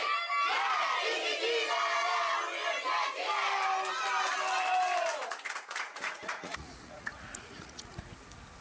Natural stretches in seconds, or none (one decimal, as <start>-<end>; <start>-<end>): 0.0-5.1; 8.0-8.6